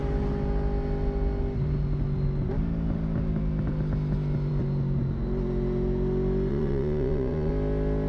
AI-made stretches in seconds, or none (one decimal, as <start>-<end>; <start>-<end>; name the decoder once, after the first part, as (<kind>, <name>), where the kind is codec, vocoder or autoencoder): 6.5-7.5 (vocoder, Vocos)